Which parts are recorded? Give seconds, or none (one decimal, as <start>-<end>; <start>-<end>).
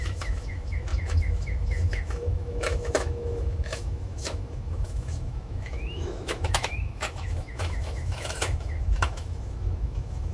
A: none